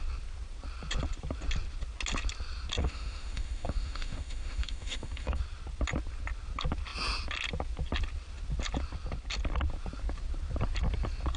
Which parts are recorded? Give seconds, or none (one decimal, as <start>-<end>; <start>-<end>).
0.0-2.8; 5.4-11.4